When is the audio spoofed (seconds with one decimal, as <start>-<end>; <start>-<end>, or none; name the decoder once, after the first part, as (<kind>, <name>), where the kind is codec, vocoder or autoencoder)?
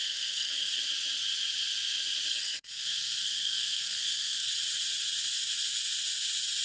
0.0-0.8 (codec, SNAC); 2.3-4.5